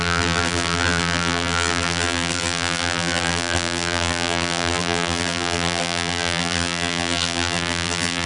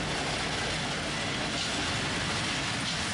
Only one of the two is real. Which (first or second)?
second